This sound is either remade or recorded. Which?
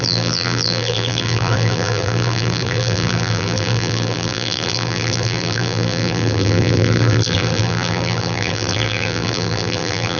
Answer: remade